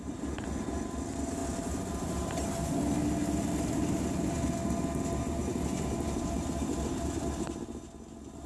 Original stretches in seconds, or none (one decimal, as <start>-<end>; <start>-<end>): 0.0-8.5